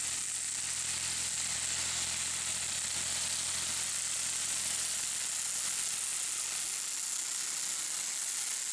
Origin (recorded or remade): recorded